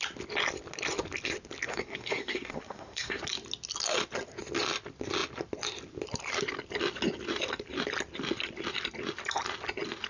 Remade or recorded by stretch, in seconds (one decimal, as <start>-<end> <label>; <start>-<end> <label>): 0.0-1.7 recorded; 1.7-3.2 remade; 3.2-10.1 recorded